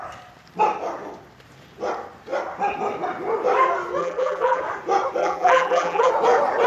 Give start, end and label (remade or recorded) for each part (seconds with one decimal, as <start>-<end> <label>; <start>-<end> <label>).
0.0-4.0 recorded; 4.0-4.6 remade; 4.6-5.2 recorded; 5.2-6.1 remade; 6.1-6.7 recorded